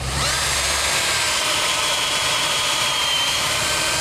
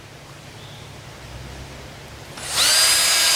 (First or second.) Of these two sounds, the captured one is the second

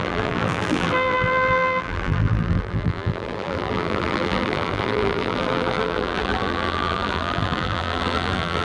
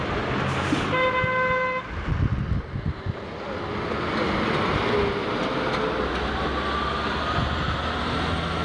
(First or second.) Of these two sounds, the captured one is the second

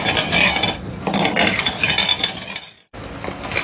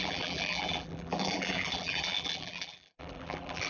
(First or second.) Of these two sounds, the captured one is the first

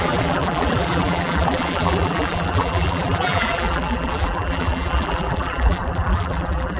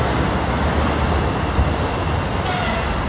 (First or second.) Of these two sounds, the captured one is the second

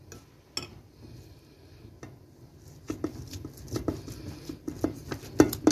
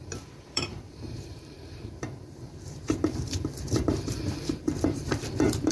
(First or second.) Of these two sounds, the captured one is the first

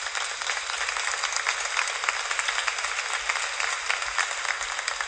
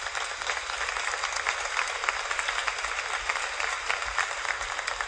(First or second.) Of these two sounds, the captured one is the first